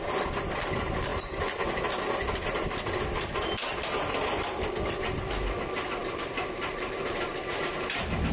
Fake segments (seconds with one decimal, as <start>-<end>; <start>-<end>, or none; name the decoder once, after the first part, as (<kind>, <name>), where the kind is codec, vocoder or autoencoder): 6.0-8.3 (vocoder, BigVGAN v2)